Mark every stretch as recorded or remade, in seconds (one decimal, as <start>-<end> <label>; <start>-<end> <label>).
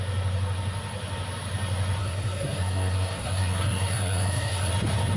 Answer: 0.0-2.0 recorded; 2.0-4.7 remade; 4.7-5.2 recorded